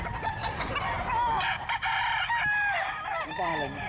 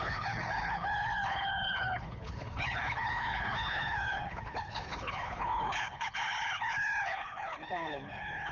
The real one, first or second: first